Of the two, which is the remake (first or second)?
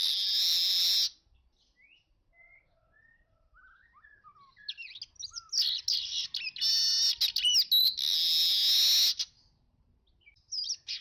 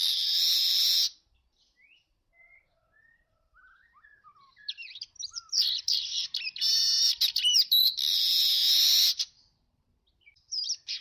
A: second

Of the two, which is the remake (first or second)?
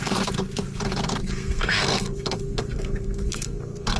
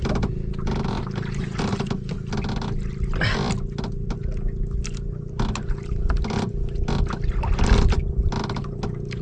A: first